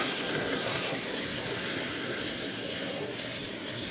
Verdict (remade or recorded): remade